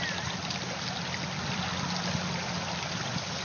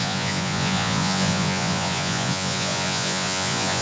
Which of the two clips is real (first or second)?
first